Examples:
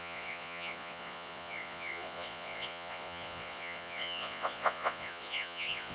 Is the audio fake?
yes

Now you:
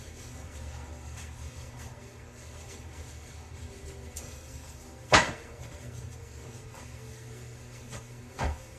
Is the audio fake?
yes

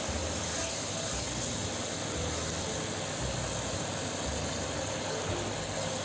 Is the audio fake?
no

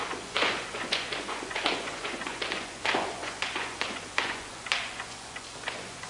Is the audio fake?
yes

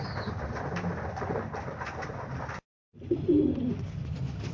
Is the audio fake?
no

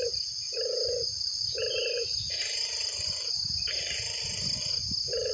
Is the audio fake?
no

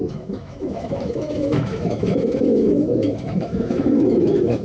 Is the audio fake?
yes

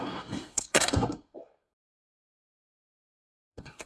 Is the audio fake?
yes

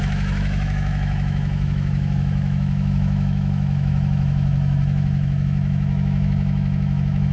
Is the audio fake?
yes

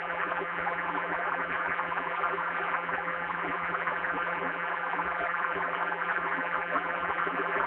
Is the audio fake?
yes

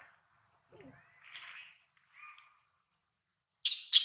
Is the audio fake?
no